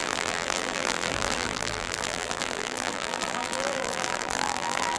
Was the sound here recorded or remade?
remade